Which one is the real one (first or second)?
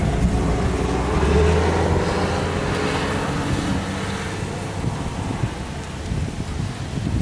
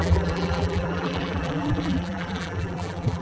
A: first